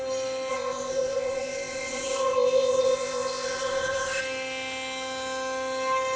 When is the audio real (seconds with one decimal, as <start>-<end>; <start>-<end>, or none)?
0.0-0.5; 4.2-6.2